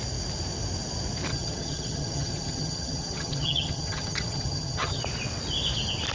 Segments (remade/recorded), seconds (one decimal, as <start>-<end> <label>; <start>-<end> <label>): 0.0-1.3 recorded; 1.3-5.0 remade; 5.0-6.1 recorded